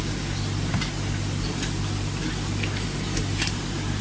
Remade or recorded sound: recorded